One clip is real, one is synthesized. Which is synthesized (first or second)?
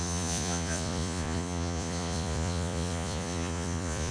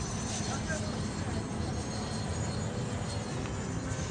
first